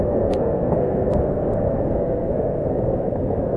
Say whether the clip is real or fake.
fake